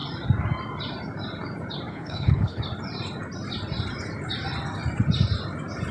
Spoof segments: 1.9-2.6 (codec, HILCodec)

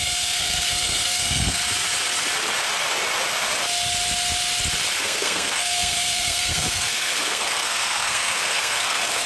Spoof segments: 0.0-1.6 (codec, SNAC); 5.0-9.3

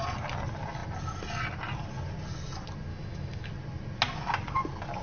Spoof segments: 2.9-3.5 (autoencoder, DAC-VAE)